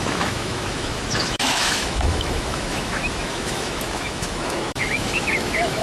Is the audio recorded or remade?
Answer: remade